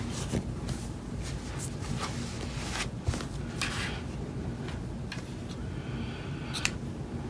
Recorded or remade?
recorded